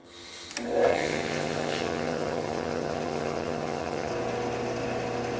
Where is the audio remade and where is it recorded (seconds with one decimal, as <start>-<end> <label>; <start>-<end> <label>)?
0.0-0.5 remade; 0.5-0.9 recorded; 0.9-4.1 remade; 4.1-5.4 recorded